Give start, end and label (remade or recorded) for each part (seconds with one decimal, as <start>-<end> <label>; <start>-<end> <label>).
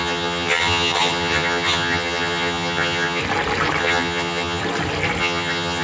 0.0-3.2 remade; 3.2-3.8 recorded; 3.8-4.6 remade; 4.6-5.2 recorded; 5.2-5.8 remade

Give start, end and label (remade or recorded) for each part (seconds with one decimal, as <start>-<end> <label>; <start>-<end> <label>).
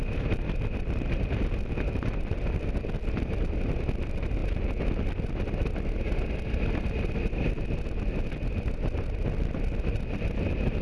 0.0-10.8 recorded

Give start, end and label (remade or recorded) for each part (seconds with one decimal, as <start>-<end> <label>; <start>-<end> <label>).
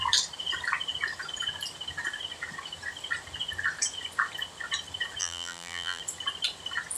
0.0-5.2 recorded; 5.2-6.0 remade; 6.0-7.0 recorded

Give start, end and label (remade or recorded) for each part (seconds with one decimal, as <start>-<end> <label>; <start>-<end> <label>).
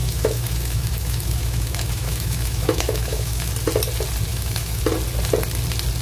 0.0-3.5 remade; 3.5-4.3 recorded; 4.3-4.8 remade; 4.8-6.0 recorded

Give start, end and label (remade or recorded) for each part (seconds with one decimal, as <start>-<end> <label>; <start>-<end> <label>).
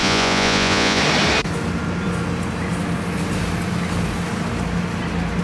0.0-1.0 remade; 1.0-5.4 recorded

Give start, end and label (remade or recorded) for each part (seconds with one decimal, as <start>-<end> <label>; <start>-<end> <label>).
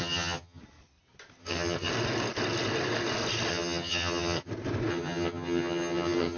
0.0-0.6 remade; 0.6-1.4 recorded; 1.4-1.9 remade; 1.9-3.5 recorded; 3.5-4.5 remade; 4.5-4.9 recorded; 4.9-6.4 remade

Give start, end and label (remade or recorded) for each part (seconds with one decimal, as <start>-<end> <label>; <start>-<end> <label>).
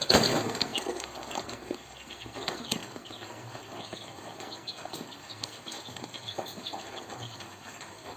0.0-8.2 remade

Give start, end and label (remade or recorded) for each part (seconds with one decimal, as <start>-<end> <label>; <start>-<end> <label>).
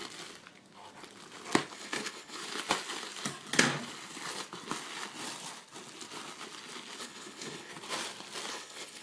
0.0-1.7 recorded; 1.7-2.4 remade; 2.4-7.0 recorded; 7.0-7.7 remade; 7.7-8.5 recorded; 8.5-9.0 remade